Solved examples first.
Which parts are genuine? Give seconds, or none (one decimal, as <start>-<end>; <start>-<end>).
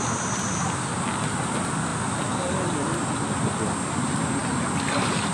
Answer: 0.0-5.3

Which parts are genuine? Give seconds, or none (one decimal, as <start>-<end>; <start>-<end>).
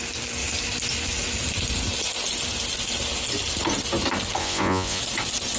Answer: 0.0-4.4; 5.0-5.6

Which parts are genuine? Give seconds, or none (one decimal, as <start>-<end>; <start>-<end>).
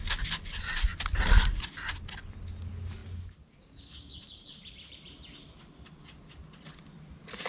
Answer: 0.0-4.1; 5.3-7.5